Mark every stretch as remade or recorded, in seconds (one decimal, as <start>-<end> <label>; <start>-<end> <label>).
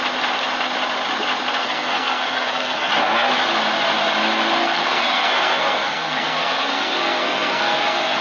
0.0-1.6 recorded; 1.6-2.9 remade; 2.9-4.6 recorded; 4.6-8.2 remade